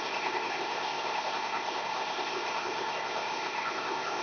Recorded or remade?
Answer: remade